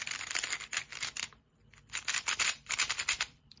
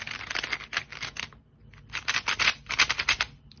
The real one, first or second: second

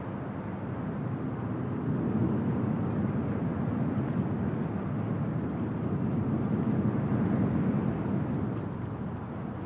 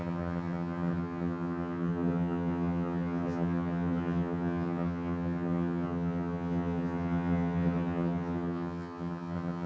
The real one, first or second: first